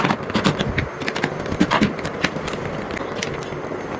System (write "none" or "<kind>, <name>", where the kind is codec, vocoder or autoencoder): vocoder, BigVGAN v2